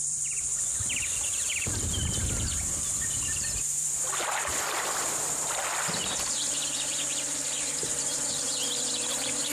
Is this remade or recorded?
remade